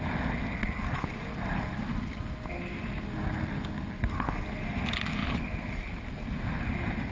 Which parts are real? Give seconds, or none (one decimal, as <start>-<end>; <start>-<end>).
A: 0.0-7.1